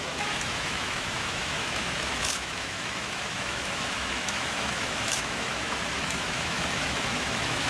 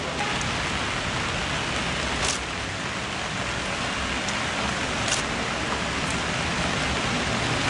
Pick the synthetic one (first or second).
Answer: first